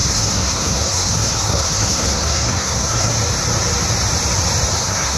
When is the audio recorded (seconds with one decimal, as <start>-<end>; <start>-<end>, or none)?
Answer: 3.1-4.8